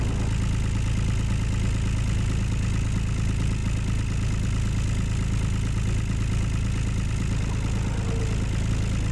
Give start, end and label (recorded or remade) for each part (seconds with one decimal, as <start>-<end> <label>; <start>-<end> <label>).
0.0-9.1 recorded